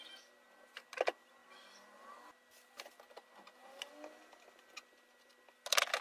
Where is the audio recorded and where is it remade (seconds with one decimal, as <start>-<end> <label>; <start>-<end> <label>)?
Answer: 0.0-6.0 recorded